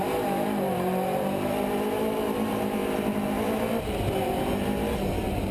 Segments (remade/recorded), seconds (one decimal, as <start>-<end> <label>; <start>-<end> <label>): 0.0-2.8 remade; 2.8-5.1 recorded; 5.1-5.5 remade